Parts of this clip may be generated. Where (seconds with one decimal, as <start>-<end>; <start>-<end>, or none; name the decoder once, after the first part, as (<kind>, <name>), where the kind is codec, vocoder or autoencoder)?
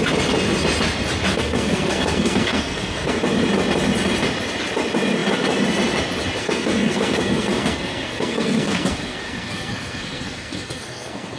1.3-3.2 (codec, SNAC); 6.4-11.4